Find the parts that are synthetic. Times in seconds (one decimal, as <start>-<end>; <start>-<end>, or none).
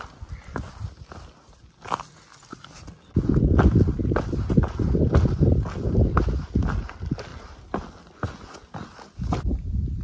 none